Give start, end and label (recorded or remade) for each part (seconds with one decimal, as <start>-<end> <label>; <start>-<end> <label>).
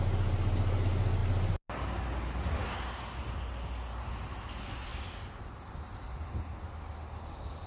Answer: 0.0-7.7 recorded